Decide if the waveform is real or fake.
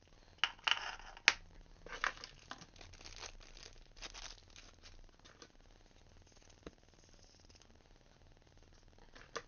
real